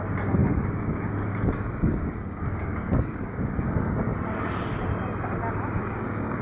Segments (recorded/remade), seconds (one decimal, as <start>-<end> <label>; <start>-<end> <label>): 0.0-4.1 remade; 4.1-5.8 recorded; 5.8-6.4 remade